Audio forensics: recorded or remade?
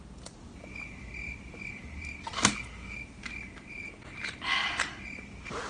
recorded